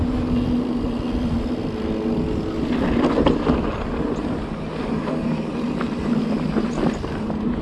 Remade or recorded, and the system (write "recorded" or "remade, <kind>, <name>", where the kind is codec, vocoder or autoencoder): recorded